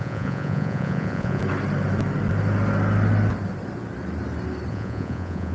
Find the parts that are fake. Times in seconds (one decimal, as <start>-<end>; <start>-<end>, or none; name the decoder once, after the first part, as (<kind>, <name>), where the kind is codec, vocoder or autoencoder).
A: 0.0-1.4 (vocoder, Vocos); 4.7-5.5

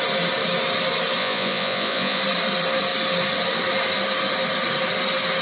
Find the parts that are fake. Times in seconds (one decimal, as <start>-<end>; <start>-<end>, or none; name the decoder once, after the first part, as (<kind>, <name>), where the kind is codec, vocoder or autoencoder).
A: 1.2-2.2 (vocoder, Vocos)

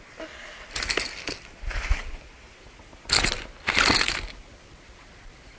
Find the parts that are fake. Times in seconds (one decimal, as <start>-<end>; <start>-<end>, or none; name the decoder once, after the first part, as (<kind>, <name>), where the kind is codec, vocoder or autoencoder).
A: none

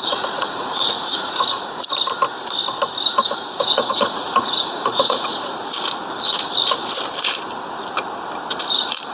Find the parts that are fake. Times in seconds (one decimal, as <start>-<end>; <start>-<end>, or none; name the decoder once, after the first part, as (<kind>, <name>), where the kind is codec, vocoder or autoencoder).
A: 0.0-1.9 (vocoder, Vocos); 3.6-5.3; 8.7-9.1

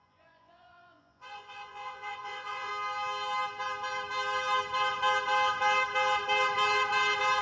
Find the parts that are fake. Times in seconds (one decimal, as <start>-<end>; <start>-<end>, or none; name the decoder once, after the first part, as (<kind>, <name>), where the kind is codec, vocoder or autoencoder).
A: 0.0-2.7 (vocoder, Vocos)

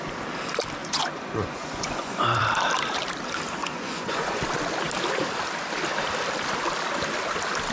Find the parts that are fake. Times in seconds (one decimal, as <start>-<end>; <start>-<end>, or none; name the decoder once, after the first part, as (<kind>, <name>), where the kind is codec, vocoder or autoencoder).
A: 0.8-2.4 (vocoder, Vocos); 3.6-4.4